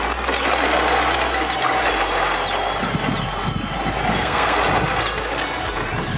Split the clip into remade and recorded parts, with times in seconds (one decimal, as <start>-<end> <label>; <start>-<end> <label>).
0.0-4.1 recorded; 4.1-4.6 remade; 4.6-6.2 recorded